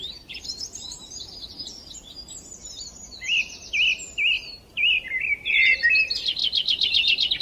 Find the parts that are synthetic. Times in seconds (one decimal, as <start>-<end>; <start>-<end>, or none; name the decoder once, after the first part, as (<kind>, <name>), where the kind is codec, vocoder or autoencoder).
0.0-1.8 (vocoder, BigVGAN v2); 4.7-6.4